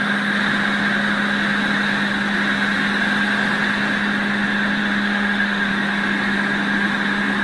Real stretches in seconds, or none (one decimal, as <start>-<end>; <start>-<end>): 0.0-4.8; 5.7-7.4